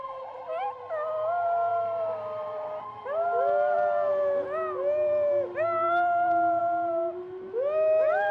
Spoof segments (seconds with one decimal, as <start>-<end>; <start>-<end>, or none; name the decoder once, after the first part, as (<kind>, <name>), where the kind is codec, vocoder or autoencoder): none